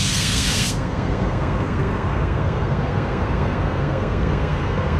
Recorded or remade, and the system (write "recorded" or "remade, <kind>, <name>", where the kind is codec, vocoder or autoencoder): remade, codec, SNAC